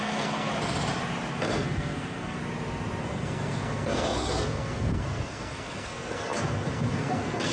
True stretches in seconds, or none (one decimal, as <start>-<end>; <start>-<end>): 0.5-1.3; 2.4-3.0